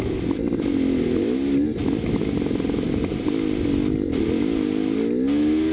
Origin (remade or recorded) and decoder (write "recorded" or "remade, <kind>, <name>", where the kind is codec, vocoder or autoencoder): recorded